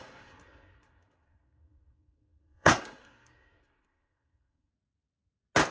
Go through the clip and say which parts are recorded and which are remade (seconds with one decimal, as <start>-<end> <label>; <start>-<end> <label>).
0.0-4.7 remade; 4.7-5.7 recorded